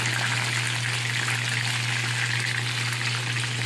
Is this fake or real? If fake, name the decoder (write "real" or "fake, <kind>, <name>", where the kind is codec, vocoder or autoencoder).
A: real